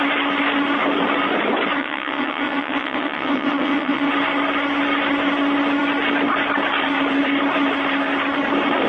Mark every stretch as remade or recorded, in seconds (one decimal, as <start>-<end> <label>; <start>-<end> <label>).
0.0-1.8 recorded; 1.8-4.1 remade; 4.1-8.9 recorded